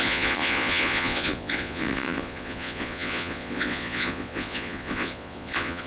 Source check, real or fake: fake